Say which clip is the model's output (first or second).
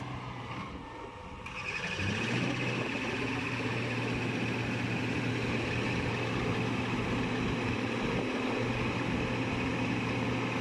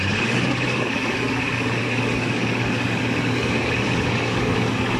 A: second